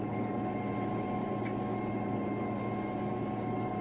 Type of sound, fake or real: real